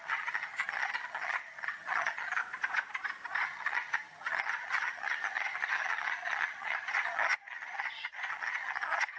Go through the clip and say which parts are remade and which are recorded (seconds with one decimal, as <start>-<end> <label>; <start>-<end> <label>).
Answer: 0.0-2.4 remade; 2.4-3.4 recorded; 3.4-9.2 remade